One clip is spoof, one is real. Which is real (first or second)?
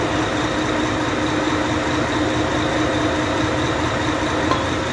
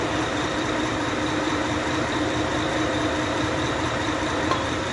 first